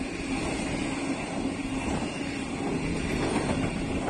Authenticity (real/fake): real